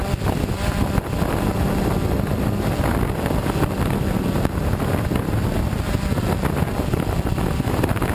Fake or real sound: real